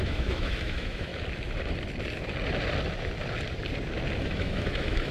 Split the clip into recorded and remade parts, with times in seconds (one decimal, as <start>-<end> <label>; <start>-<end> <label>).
0.0-1.1 remade; 1.1-4.2 recorded; 4.2-5.1 remade